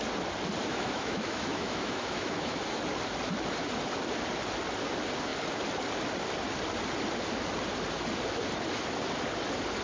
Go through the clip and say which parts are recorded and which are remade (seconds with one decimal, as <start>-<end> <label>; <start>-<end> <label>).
0.0-0.6 recorded; 0.6-2.6 remade; 2.6-9.8 recorded